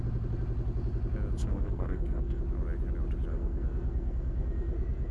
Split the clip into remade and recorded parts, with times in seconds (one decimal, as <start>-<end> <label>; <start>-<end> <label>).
0.0-1.4 recorded; 1.4-2.4 remade; 2.4-3.3 recorded; 3.3-5.1 remade